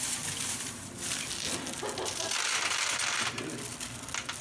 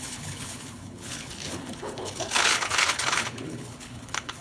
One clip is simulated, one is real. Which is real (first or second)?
first